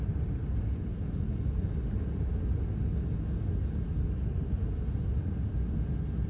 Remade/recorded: recorded